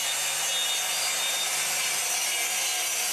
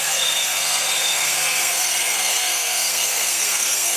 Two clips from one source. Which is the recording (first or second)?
first